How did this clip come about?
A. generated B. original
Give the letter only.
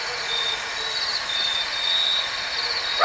B